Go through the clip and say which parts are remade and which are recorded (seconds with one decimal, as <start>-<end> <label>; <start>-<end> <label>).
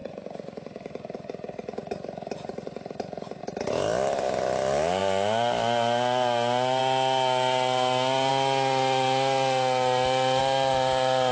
0.0-3.4 remade; 3.4-11.3 recorded